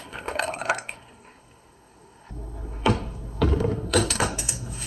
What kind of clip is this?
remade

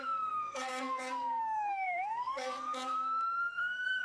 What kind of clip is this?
remade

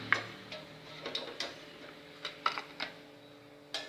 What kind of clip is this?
recorded